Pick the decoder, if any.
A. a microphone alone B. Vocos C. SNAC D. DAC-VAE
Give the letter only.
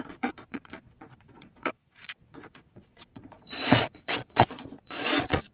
B